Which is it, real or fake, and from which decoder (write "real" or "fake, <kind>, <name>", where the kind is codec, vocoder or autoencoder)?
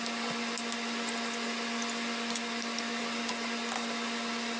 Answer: real